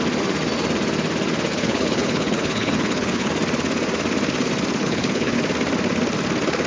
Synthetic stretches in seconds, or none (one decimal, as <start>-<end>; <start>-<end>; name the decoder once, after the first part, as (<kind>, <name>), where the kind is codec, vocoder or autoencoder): 1.5-3.3 (codec, HILCodec); 4.8-5.4